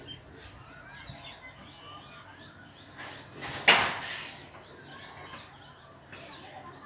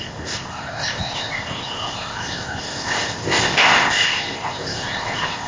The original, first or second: first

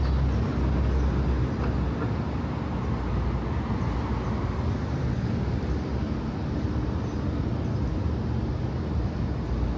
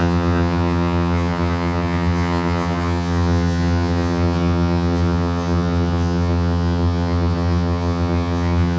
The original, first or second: first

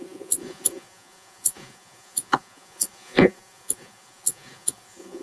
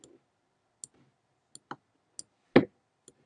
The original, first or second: second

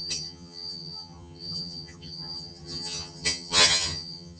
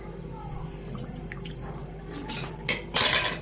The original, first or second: second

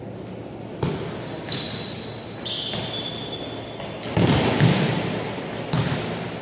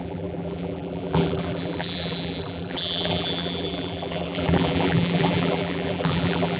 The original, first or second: first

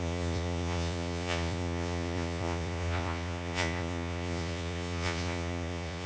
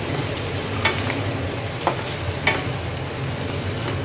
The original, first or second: second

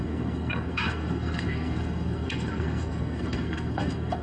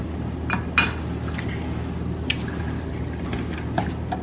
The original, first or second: second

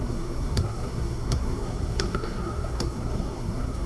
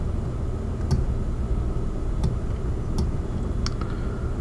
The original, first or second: second